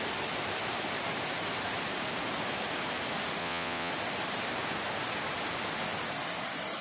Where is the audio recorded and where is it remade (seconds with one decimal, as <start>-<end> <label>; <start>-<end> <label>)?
0.0-3.4 recorded; 3.4-3.9 remade; 3.9-6.8 recorded